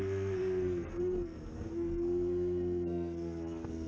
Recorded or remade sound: remade